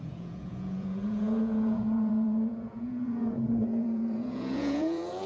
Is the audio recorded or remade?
remade